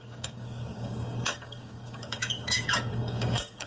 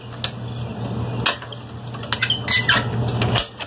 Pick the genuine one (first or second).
second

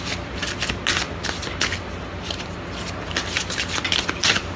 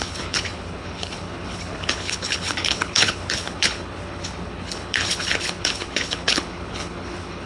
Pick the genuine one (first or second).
first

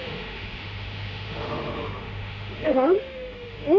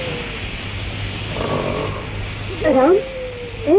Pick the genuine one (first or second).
second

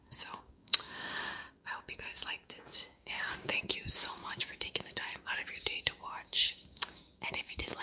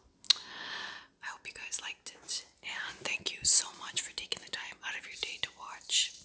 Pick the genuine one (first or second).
second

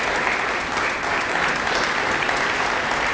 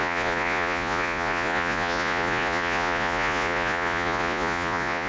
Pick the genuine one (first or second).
first